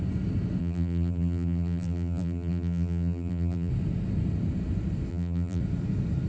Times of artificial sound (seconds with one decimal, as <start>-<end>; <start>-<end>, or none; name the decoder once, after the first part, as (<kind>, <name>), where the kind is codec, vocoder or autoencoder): 0.6-3.7 (vocoder, BigVGAN v2); 5.1-5.6